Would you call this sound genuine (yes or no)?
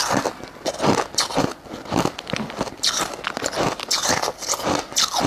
yes